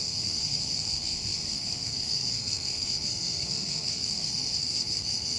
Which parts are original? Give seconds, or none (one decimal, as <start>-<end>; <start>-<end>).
none